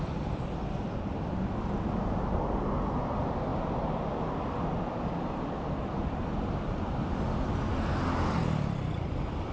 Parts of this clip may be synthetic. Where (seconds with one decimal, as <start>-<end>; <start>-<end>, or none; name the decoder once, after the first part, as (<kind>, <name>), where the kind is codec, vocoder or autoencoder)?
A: none